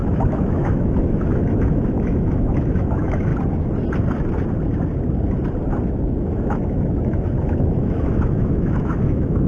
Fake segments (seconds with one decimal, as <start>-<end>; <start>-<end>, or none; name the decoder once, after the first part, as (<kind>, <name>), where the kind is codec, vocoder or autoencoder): 0.0-3.3 (autoencoder, DAC-VAE); 6.2-9.5